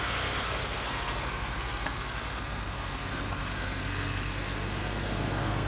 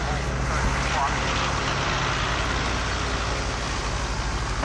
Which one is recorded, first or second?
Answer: second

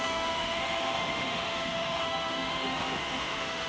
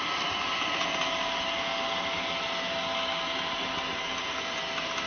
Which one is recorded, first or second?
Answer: second